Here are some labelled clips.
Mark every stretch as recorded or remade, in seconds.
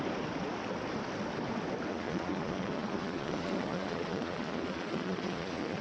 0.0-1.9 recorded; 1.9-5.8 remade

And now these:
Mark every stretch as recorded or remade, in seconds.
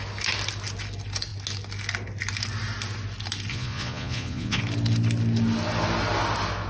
0.0-3.5 recorded; 3.5-4.6 remade; 4.6-6.7 recorded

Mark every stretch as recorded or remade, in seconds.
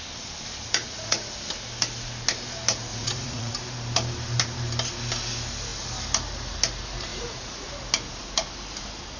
0.0-0.8 recorded; 0.8-1.4 remade; 1.4-2.9 recorded; 2.9-3.5 remade; 3.5-7.1 recorded; 7.1-7.7 remade; 7.7-9.2 recorded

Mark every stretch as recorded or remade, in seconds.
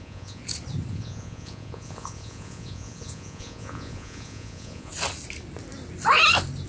0.0-0.4 remade; 0.4-0.9 recorded; 0.9-4.9 remade; 4.9-6.7 recorded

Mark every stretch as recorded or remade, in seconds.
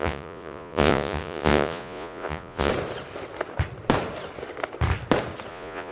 0.0-2.7 remade; 2.7-5.5 recorded; 5.5-5.9 remade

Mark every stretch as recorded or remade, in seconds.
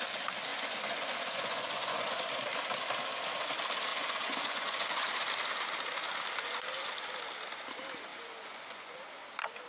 0.0-0.5 recorded; 0.5-2.2 remade; 2.2-3.9 recorded; 3.9-5.1 remade; 5.1-8.1 recorded; 8.1-8.9 remade; 8.9-9.7 recorded